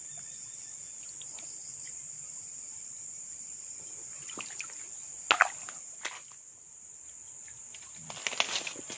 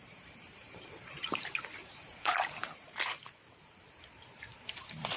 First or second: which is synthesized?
second